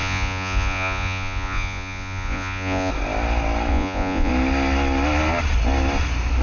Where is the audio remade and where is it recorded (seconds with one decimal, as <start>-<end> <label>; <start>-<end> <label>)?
0.0-2.9 remade; 2.9-3.7 recorded; 3.7-4.3 remade; 4.3-6.4 recorded